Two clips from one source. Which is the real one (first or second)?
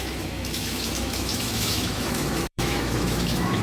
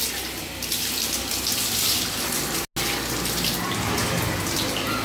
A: second